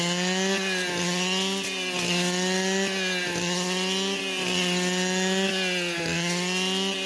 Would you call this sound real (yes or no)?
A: yes